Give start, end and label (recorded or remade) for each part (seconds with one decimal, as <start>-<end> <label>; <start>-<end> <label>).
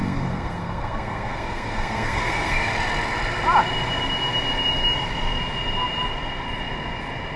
0.0-2.7 remade; 2.7-7.4 recorded